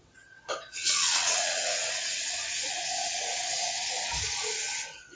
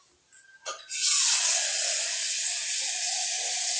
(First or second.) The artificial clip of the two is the first